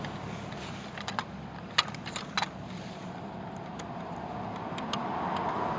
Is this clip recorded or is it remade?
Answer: recorded